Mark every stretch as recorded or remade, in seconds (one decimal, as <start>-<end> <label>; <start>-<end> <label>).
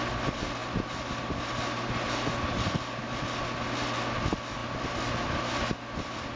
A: 0.0-6.4 recorded